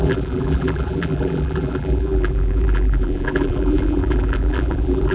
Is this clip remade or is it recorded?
remade